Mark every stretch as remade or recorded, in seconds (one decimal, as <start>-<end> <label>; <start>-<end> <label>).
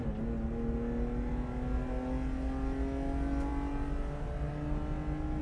0.0-5.4 recorded